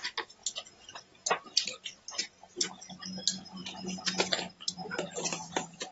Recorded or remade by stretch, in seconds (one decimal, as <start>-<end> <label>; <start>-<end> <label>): 0.0-5.9 recorded